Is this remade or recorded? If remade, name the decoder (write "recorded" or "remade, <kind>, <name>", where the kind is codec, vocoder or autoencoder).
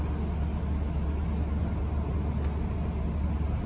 recorded